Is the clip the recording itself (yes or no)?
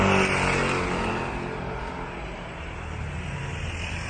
yes